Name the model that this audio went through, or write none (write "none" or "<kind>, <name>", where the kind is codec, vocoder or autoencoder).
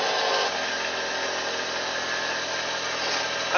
none